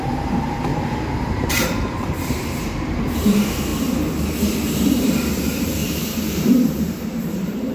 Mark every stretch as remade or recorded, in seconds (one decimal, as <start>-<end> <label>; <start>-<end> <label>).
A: 0.0-0.7 remade; 0.7-1.3 recorded; 1.3-3.7 remade; 3.7-5.3 recorded; 5.3-7.7 remade